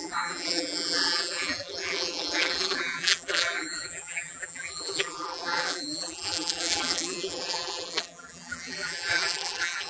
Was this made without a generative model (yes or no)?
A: no